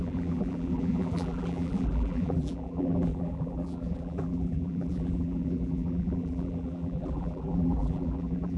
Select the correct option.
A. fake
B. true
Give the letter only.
A